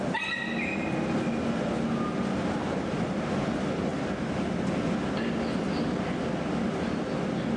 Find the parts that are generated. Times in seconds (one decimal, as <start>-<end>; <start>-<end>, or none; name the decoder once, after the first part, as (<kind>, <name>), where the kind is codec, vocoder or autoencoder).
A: none